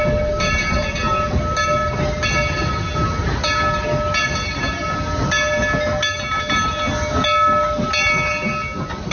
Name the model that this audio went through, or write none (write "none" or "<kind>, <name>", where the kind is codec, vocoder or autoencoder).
none